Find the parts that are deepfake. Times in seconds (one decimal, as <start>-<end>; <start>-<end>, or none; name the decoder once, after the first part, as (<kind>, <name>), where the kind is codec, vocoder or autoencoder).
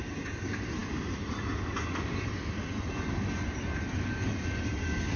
none